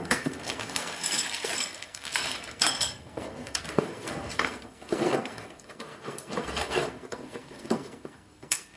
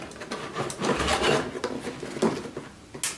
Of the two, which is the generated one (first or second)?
first